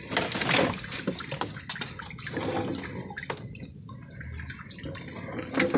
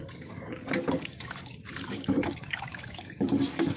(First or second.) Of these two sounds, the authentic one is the first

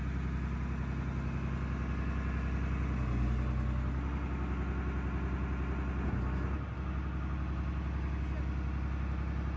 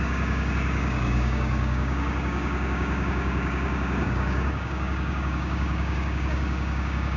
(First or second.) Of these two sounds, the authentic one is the first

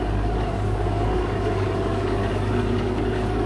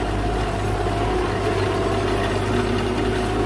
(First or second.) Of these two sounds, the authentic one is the second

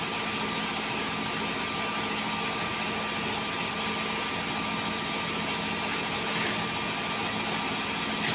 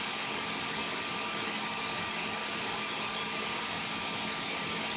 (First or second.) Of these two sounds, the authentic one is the first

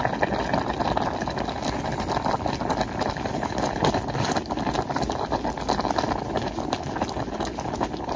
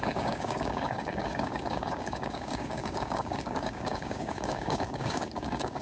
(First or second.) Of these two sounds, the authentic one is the first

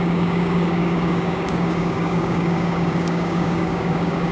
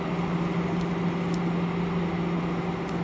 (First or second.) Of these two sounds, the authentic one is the second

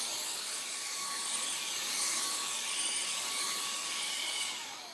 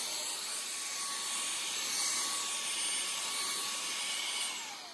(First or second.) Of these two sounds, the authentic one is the second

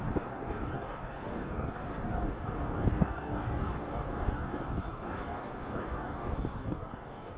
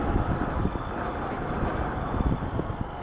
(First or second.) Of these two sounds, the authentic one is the second